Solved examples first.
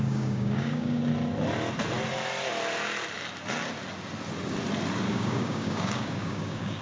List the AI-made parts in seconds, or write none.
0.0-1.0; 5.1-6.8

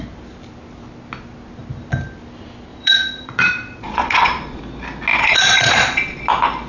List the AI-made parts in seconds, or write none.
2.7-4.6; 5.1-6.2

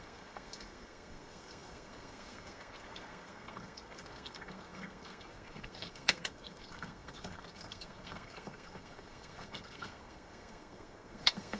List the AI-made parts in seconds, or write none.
0.0-11.6

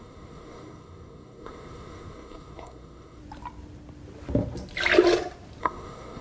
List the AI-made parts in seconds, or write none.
0.0-3.2; 5.6-6.2